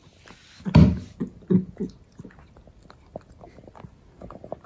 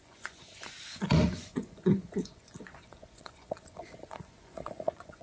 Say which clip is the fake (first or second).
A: second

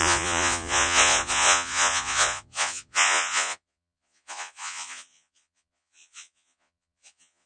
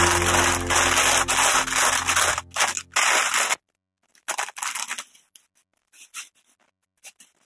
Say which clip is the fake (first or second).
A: first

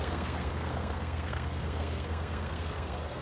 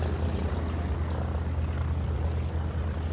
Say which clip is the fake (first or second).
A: first